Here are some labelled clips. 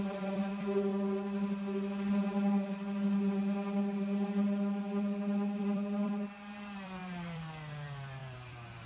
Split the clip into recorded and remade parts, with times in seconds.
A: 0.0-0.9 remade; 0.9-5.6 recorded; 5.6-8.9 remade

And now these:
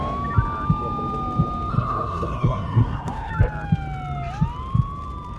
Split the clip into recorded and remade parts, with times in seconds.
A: 0.0-1.7 recorded; 1.7-3.3 remade; 3.3-5.4 recorded

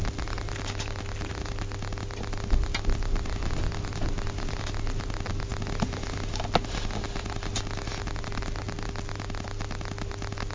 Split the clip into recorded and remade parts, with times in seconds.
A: 0.0-10.5 recorded

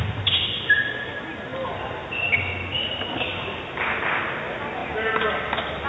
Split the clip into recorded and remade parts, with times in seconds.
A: 0.0-5.9 recorded

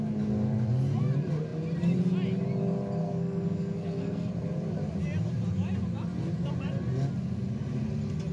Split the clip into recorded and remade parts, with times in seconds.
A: 0.0-3.0 recorded; 3.0-4.3 remade; 4.3-8.3 recorded

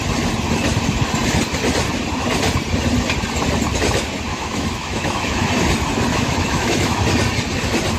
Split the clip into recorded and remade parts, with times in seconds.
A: 0.0-4.3 recorded; 4.3-5.5 remade; 5.5-6.1 recorded; 6.1-7.0 remade; 7.0-8.0 recorded